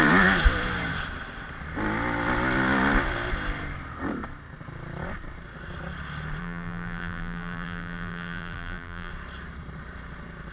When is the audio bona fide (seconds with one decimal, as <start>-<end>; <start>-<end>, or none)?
0.0-6.4; 9.1-10.5